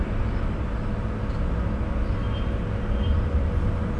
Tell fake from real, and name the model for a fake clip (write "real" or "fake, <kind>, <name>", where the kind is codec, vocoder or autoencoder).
real